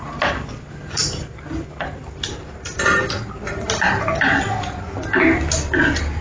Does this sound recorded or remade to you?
recorded